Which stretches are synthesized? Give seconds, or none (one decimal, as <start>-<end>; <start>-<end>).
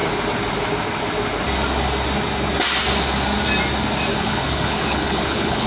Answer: 4.1-5.7